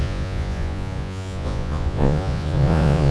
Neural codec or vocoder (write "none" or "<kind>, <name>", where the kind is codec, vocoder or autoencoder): vocoder, Vocos